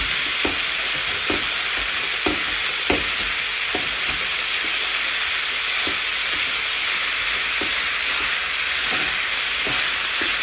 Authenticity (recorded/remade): recorded